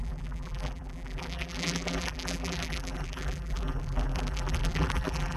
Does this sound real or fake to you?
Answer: fake